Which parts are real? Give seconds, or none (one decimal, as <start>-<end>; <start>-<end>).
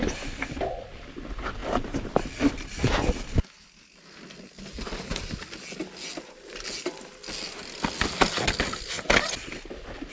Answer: 0.0-10.1